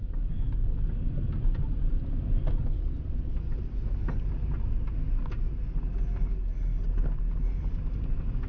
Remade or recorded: recorded